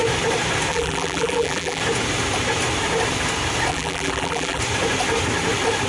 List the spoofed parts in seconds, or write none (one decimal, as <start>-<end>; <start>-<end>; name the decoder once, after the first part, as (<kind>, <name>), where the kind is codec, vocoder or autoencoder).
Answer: 0.7-1.8 (vocoder, BigVGAN v2); 3.7-4.6